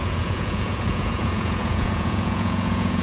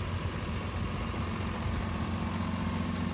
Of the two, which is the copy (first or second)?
first